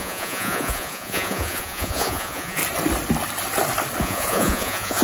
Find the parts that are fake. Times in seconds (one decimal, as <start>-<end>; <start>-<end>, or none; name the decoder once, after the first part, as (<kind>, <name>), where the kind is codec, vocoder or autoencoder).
0.0-2.6 (vocoder, Vocos); 4.0-5.0